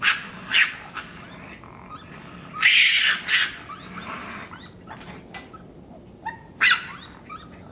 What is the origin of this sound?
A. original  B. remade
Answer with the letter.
A